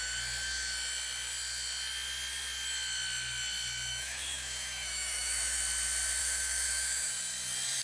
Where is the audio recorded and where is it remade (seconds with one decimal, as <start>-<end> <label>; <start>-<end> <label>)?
0.0-3.9 recorded; 3.9-5.6 remade; 5.6-6.2 recorded; 6.2-7.1 remade; 7.1-7.8 recorded